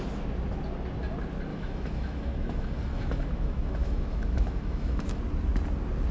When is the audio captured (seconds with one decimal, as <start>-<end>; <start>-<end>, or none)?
0.0-1.5; 5.2-6.1